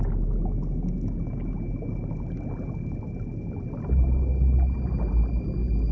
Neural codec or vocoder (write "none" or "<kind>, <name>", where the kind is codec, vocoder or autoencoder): none